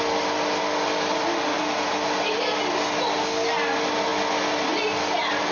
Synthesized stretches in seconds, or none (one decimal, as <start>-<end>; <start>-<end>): none